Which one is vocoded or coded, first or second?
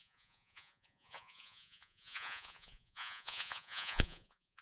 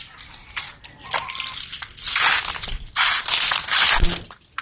first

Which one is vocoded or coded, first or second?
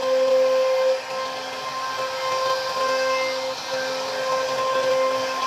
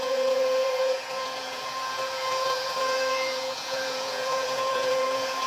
second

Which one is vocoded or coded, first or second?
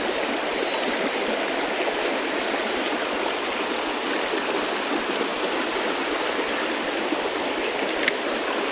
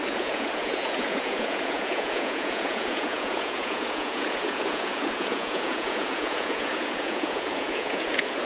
second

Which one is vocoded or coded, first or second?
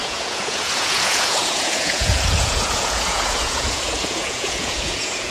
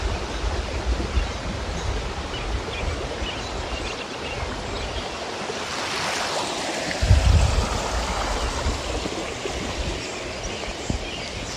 first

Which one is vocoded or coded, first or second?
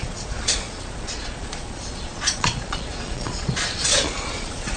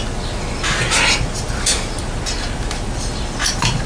first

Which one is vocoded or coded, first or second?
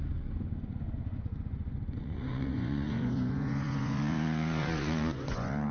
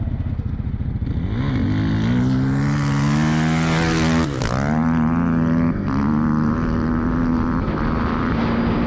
first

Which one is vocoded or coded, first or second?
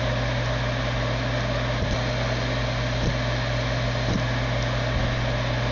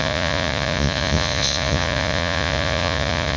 second